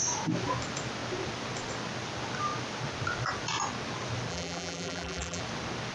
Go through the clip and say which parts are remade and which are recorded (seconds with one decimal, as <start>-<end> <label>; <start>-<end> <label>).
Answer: 0.0-4.3 recorded; 4.3-5.4 remade; 5.4-5.9 recorded

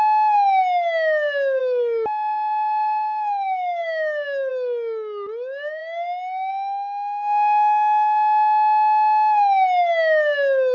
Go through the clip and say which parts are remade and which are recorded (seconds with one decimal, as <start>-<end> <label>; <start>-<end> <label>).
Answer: 0.0-1.6 recorded; 1.6-4.5 remade; 4.5-10.7 recorded

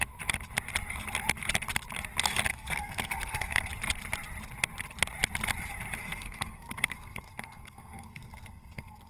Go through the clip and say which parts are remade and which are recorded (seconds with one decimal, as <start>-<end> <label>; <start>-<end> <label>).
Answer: 0.0-2.5 recorded; 2.5-3.7 remade; 3.7-6.0 recorded; 6.0-9.1 remade